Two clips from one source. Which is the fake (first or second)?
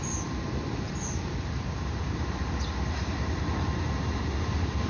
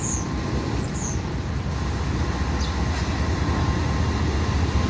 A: first